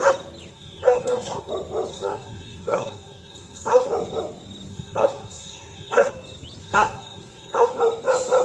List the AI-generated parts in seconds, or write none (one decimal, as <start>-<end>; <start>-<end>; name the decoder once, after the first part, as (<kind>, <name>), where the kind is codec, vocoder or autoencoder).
0.5-1.5 (codec, SNAC); 1.9-3.9; 4.7-6.1; 6.6-7.7